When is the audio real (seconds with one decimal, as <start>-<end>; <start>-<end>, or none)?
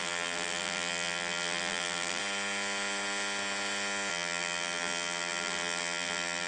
2.2-4.1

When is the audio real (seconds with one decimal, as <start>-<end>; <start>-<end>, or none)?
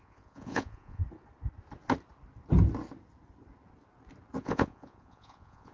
1.0-4.4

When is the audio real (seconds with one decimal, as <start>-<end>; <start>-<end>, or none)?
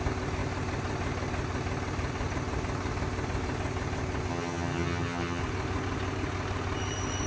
0.0-4.3; 5.4-7.3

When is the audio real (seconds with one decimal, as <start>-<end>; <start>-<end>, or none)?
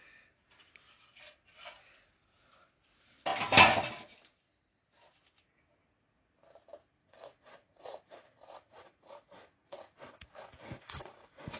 0.0-7.0